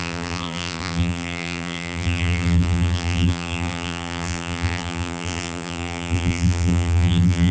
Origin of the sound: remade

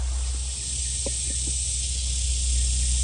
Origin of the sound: recorded